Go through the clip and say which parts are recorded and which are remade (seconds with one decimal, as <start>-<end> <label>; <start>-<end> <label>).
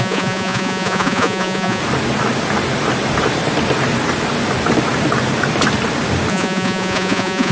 0.0-1.8 remade; 1.8-6.3 recorded; 6.3-7.5 remade